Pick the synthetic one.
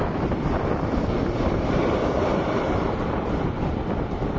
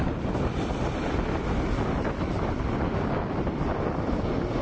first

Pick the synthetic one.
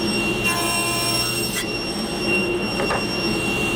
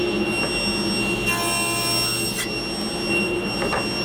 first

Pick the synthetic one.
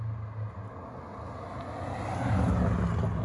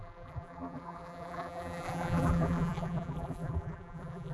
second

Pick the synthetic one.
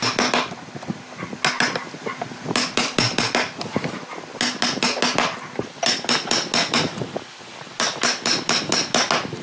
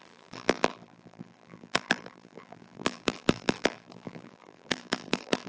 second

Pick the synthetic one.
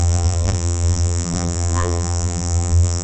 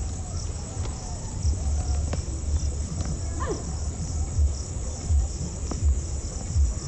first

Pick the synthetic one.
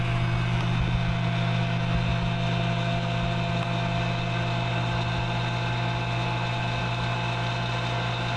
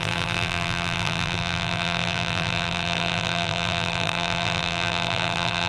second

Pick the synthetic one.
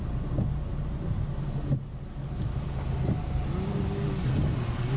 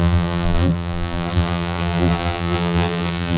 second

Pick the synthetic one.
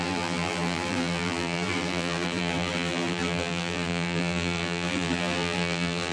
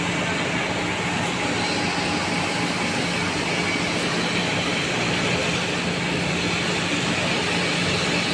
first